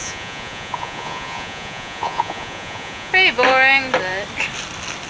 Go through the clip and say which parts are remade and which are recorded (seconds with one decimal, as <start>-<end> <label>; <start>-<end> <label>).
0.0-3.1 remade; 3.1-5.1 recorded